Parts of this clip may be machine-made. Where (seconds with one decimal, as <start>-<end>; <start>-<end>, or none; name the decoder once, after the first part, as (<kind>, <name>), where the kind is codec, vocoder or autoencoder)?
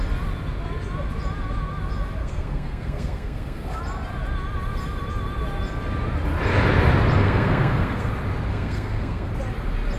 2.2-3.8 (codec, SNAC); 7.2-8.1; 8.5-9.3